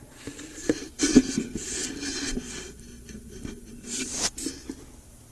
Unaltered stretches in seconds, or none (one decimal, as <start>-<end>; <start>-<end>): 0.0-5.3